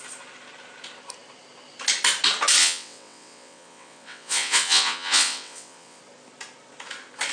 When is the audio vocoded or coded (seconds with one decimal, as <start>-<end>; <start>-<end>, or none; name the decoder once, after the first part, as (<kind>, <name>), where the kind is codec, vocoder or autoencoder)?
2.6-6.0 (vocoder, WaveNeXt)